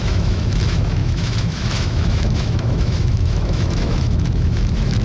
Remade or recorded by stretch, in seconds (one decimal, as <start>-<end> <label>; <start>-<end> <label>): 0.0-5.0 remade